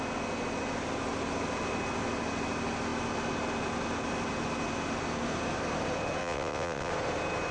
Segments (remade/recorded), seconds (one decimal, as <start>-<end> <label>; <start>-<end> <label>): 0.0-6.2 recorded; 6.2-6.9 remade; 6.9-7.5 recorded